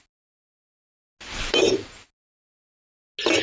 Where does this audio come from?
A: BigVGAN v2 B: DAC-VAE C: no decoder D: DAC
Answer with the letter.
C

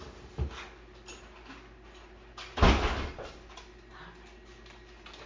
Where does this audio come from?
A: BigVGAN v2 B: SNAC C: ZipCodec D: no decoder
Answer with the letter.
D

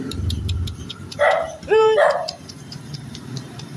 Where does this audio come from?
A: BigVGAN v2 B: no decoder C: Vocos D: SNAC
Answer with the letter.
A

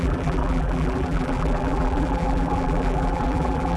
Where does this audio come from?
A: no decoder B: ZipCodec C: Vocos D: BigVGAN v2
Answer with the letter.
D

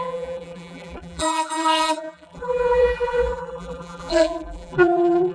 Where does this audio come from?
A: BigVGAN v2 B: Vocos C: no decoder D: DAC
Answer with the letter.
A